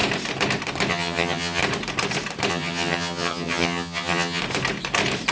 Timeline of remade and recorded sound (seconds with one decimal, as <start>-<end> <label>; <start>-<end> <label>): 0.0-0.9 recorded; 0.9-1.6 remade; 1.6-2.5 recorded; 2.5-4.4 remade; 4.4-5.3 recorded